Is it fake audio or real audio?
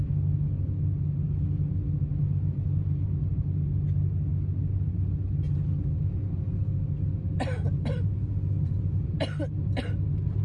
real